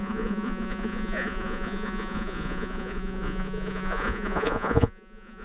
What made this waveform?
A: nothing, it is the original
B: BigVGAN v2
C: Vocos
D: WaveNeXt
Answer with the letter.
C